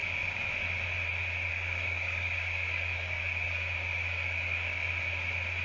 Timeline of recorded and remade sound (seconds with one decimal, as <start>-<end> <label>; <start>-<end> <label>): 0.0-0.5 remade; 0.5-1.5 recorded; 1.5-4.9 remade; 4.9-5.6 recorded